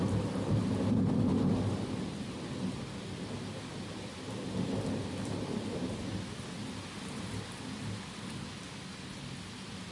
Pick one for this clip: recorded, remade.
recorded